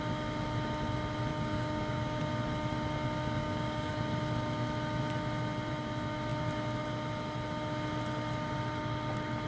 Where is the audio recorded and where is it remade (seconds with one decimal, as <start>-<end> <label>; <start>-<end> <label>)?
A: 0.0-1.3 recorded; 1.3-2.2 remade; 2.2-3.4 recorded; 3.4-3.9 remade; 3.9-9.5 recorded